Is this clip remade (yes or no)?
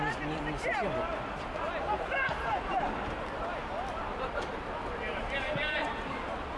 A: no